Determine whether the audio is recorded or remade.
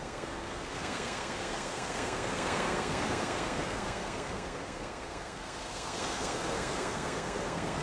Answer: remade